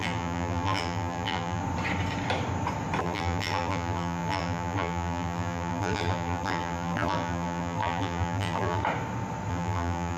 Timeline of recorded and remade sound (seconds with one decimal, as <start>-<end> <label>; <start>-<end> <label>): 0.0-1.6 remade; 1.6-3.0 recorded; 3.0-8.8 remade; 8.8-9.5 recorded; 9.5-10.2 remade